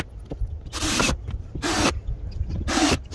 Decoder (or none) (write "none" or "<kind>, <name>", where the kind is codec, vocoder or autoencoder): none